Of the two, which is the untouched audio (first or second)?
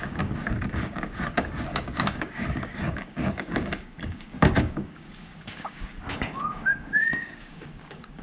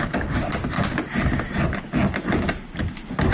second